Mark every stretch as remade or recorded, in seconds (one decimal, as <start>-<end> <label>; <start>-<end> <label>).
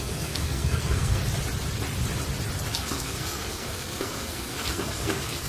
0.0-1.2 remade; 1.2-2.7 recorded; 2.7-5.5 remade